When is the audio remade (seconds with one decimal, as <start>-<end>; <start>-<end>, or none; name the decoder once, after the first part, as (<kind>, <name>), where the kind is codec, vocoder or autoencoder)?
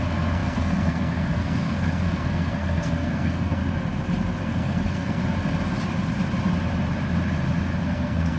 0.0-3.6 (codec, SNAC); 4.4-5.2; 7.8-8.4